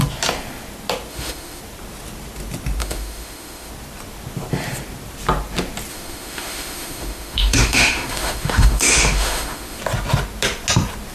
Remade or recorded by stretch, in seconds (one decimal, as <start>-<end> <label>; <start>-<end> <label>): 0.0-1.1 recorded; 1.1-1.6 remade; 1.6-2.8 recorded; 2.8-3.7 remade; 3.7-5.9 recorded; 5.9-9.8 remade; 9.8-11.1 recorded